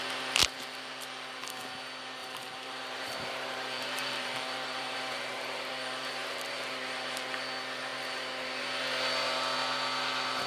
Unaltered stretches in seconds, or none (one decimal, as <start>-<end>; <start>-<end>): 0.0-0.4; 1.4-2.2; 7.3-10.5